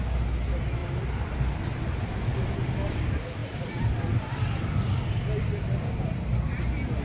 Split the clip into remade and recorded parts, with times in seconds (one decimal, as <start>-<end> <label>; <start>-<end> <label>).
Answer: 0.0-0.8 recorded; 0.8-1.5 remade; 1.5-3.4 recorded; 3.4-6.6 remade; 6.6-7.0 recorded